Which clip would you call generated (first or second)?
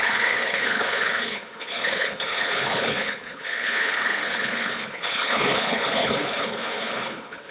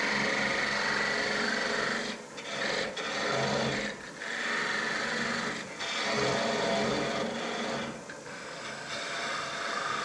first